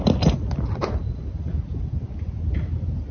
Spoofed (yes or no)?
no